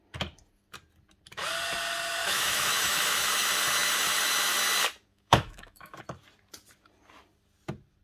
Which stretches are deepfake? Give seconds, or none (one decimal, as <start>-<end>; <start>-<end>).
2.2-3.2; 5.1-6.0